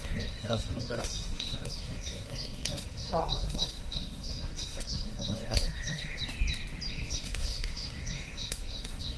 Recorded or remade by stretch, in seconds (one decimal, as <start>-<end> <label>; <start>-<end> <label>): 0.0-6.2 remade; 6.2-6.9 recorded; 6.9-9.2 remade

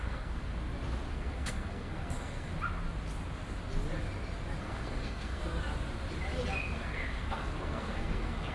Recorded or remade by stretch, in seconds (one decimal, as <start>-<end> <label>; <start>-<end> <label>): 0.0-0.5 remade; 0.5-1.1 recorded; 1.1-2.5 remade; 2.5-4.6 recorded; 4.6-5.4 remade; 5.4-6.6 recorded; 6.6-8.5 remade

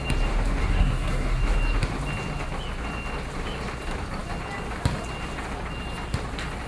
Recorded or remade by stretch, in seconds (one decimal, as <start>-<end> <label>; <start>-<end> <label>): 0.0-0.6 recorded; 0.6-1.4 remade; 1.4-6.7 recorded

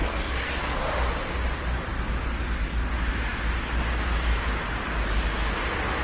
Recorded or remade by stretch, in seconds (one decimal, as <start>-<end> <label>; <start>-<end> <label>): 0.0-0.5 remade; 0.5-6.0 recorded

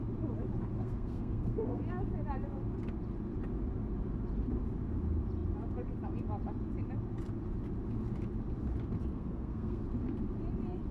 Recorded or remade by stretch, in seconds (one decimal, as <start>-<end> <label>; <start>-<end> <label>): 0.0-0.7 recorded; 0.7-1.8 remade; 1.8-9.0 recorded; 9.0-9.8 remade; 9.8-10.9 recorded